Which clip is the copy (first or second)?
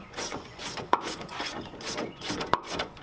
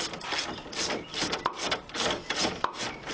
first